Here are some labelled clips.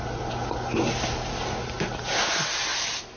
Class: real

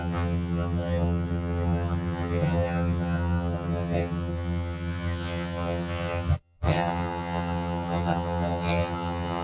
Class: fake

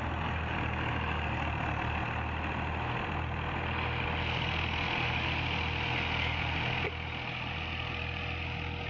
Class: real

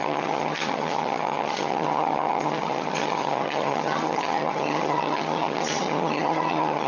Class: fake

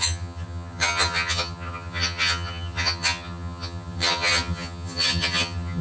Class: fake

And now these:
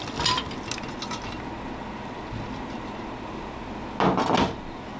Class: real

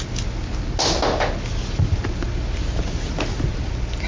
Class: real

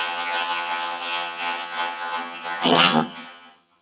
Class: fake